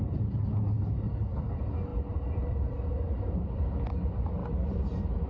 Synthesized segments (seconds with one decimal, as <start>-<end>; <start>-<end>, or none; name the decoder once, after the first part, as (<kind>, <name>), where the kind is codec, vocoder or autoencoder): none